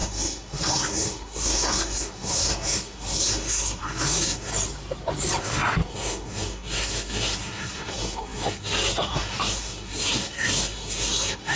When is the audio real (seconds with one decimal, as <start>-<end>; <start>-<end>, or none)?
4.5-5.4